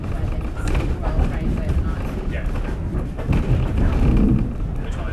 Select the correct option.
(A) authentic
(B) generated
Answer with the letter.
A